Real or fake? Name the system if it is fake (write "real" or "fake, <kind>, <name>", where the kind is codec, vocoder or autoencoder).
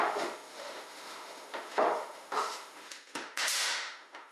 fake, autoencoder, DAC-VAE